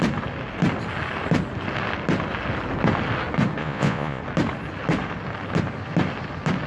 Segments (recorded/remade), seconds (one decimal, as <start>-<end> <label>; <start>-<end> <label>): 0.0-3.6 recorded; 3.6-4.2 remade; 4.2-6.7 recorded